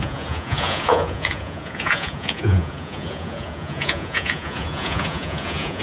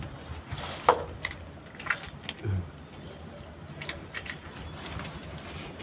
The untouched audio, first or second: second